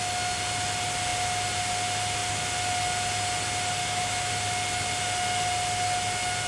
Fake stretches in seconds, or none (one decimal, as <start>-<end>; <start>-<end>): 3.8-4.3